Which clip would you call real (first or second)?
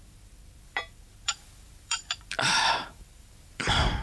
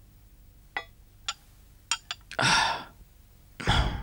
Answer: second